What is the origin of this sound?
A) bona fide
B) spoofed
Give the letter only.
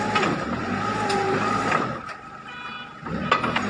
A